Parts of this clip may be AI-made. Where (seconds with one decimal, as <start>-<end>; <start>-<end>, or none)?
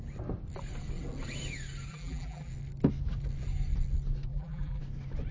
1.9-2.5; 4.3-4.8